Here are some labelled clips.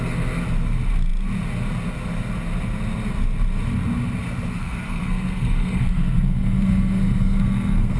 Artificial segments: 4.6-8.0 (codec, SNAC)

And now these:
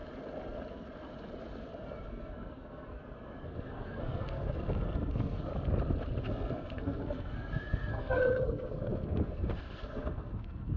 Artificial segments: 2.1-5.5 (codec, SNAC); 6.2-10.8